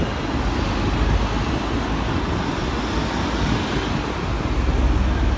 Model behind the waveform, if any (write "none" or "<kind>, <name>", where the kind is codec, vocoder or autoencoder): none